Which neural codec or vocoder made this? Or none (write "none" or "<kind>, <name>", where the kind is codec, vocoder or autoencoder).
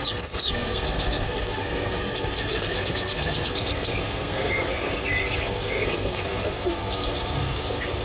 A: codec, SNAC